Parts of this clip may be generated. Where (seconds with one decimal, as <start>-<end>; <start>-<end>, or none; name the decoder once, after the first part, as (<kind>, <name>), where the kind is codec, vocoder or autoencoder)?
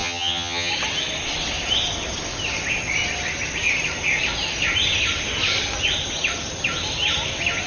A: 0.0-0.7 (vocoder, HiFi-GAN)